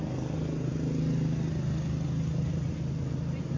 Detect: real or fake real